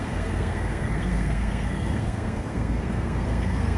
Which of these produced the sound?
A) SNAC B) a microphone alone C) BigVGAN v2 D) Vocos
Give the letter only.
A